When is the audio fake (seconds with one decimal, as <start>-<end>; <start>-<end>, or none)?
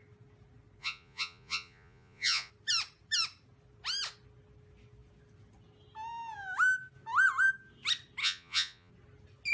0.8-2.5; 8.2-8.9